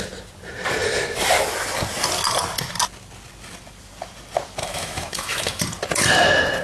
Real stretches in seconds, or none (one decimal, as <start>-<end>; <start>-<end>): 0.0-4.6; 5.6-6.6